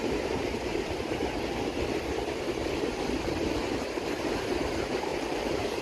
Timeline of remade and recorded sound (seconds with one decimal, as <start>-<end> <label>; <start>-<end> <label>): 0.0-1.2 remade; 1.2-3.3 recorded; 3.3-5.8 remade